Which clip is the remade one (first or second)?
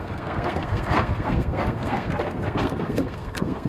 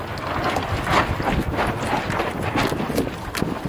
first